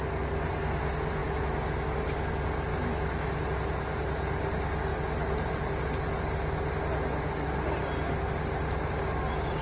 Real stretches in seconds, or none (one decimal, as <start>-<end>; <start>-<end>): 0.0-1.2; 2.3-2.7; 3.4-9.6

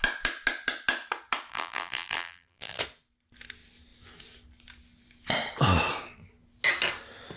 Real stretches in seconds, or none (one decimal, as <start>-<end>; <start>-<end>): 0.0-1.5; 2.8-7.4

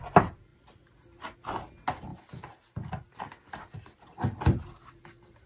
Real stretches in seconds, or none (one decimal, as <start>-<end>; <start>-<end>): 0.0-2.1

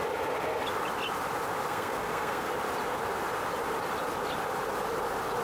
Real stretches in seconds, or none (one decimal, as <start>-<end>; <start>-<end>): 0.0-1.7; 2.5-5.4

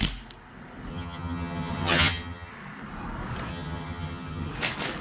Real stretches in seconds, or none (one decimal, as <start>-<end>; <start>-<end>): 0.0-0.9; 2.5-3.5; 4.5-5.0